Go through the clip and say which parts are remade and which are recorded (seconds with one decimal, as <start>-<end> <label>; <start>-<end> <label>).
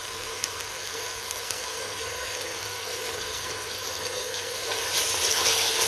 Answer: 0.0-4.8 remade; 4.8-5.3 recorded; 5.3-5.9 remade